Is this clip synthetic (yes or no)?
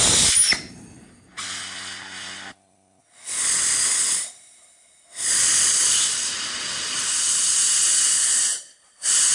no